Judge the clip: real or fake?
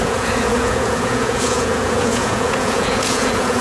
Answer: fake